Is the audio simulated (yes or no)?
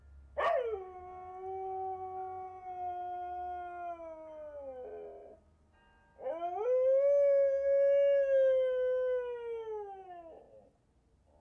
no